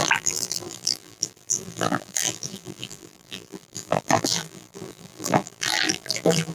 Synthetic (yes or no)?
yes